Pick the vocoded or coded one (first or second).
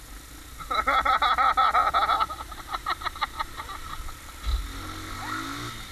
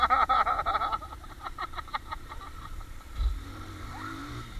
second